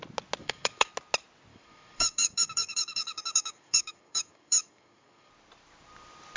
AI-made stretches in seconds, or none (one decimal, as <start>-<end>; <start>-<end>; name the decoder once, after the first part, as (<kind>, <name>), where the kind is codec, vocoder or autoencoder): 0.4-0.9 (codec, DAC); 1.5-5.3